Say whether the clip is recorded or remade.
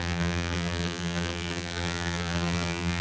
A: remade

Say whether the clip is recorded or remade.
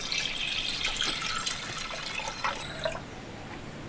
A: recorded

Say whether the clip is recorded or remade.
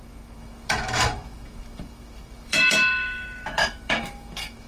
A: remade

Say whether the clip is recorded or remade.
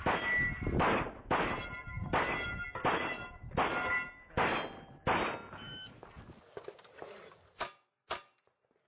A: recorded